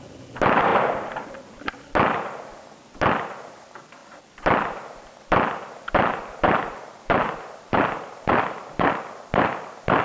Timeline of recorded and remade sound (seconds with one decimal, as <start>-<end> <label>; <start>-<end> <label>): 0.0-0.7 recorded; 0.7-1.6 remade; 1.6-2.5 recorded; 2.5-3.1 remade; 3.1-4.0 recorded; 4.0-8.9 remade; 8.9-10.0 recorded